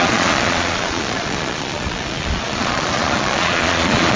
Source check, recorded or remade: remade